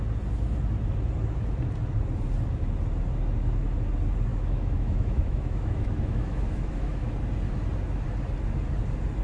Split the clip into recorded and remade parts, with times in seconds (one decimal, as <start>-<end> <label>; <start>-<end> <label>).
0.0-4.3 recorded; 4.3-7.1 remade; 7.1-9.2 recorded